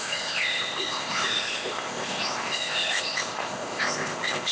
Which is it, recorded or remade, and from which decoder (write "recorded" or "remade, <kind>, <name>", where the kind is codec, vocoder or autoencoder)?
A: remade, codec, ZipCodec